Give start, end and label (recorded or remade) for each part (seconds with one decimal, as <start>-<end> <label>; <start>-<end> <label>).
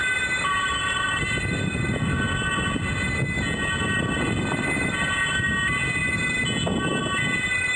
0.0-1.8 remade; 1.8-7.8 recorded